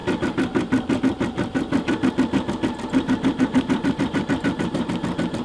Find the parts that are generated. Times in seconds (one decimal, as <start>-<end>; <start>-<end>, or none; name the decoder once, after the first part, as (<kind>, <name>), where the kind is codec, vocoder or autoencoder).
3.3-4.9 (vocoder, BigVGAN v2)